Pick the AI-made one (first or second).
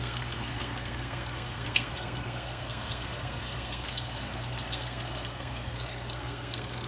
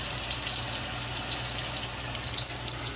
first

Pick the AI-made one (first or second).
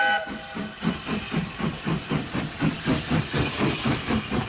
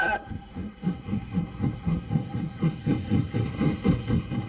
second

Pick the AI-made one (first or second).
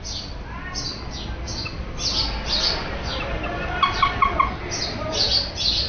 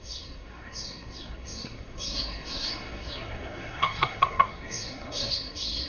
second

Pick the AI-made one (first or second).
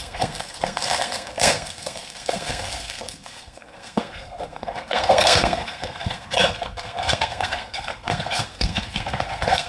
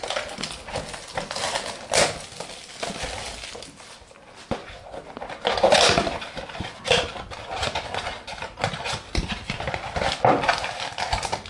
first